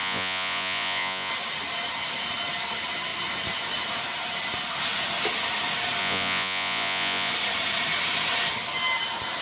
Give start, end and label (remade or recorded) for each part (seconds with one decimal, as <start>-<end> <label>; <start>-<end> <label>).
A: 0.0-1.3 remade; 1.3-6.0 recorded; 6.0-7.3 remade; 7.3-9.4 recorded

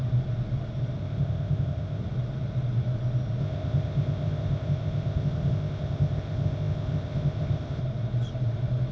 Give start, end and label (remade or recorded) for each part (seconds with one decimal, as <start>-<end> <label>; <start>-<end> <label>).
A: 0.0-1.0 recorded; 1.0-2.0 remade; 2.0-3.4 recorded; 3.4-7.8 remade; 7.8-8.9 recorded

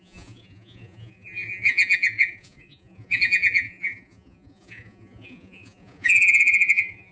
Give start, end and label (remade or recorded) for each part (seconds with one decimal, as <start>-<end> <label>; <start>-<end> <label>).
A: 0.0-7.1 remade

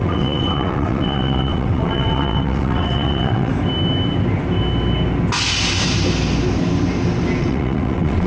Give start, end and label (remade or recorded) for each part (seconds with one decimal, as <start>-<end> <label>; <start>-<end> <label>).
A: 0.0-3.5 remade; 3.5-7.4 recorded; 7.4-8.3 remade